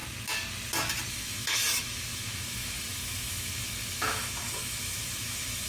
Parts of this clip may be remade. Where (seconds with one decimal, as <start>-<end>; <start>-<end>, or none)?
1.1-5.7

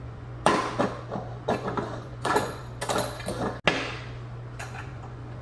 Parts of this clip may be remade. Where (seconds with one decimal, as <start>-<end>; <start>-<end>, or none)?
0.0-0.5; 1.3-2.6; 4.6-5.4

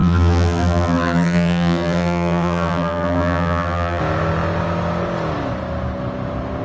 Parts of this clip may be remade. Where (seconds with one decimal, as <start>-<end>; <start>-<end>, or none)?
0.0-4.0

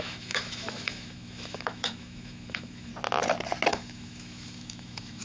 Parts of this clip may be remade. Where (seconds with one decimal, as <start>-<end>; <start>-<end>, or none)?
0.0-2.9; 3.7-5.2